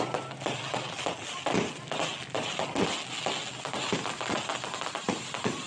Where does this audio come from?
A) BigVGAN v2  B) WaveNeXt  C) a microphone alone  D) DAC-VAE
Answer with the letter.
C